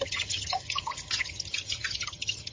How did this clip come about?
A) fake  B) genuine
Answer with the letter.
A